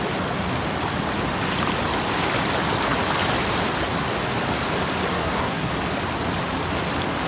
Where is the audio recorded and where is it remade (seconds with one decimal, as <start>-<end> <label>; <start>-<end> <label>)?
0.0-5.1 recorded; 5.1-5.7 remade; 5.7-7.3 recorded